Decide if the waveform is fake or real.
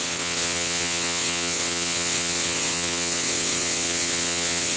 fake